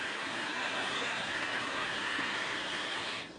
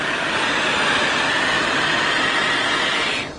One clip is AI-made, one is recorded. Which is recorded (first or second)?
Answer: second